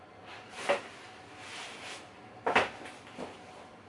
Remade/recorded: recorded